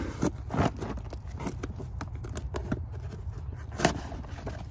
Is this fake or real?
real